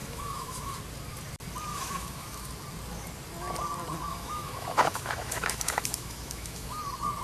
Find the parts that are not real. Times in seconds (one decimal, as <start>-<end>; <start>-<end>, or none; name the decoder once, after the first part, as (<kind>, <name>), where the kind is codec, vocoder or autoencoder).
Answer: 0.0-0.8 (autoencoder, DAC-VAE); 1.7-2.5; 4.1-6.8